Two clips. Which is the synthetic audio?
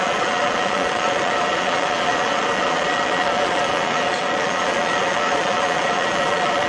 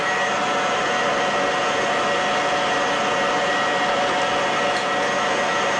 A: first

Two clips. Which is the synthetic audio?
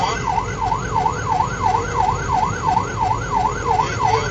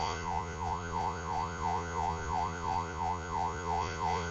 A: second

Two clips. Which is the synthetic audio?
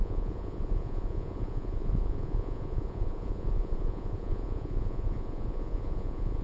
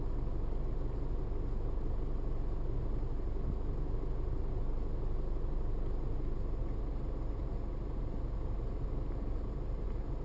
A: first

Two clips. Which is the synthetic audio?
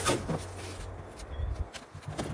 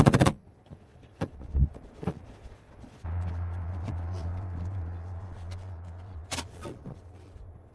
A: second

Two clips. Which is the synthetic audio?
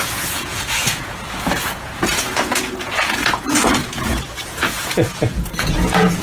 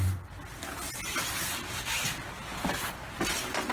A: first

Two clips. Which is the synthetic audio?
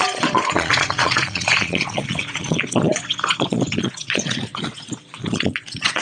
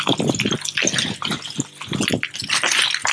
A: first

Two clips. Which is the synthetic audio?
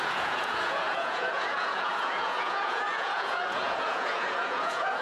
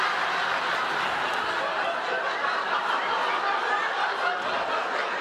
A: first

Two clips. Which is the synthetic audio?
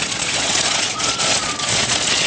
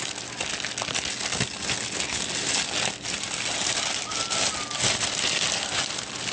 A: first